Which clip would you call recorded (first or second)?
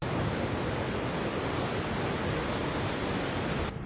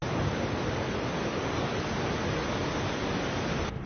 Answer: second